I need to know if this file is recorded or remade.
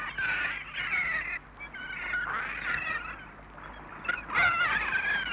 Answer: recorded